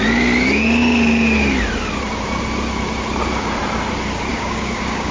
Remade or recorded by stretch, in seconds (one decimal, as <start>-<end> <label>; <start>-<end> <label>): 0.0-4.3 recorded; 4.3-5.1 remade